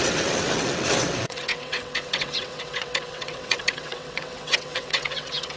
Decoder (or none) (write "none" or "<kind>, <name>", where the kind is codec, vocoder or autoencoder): vocoder, WaveNeXt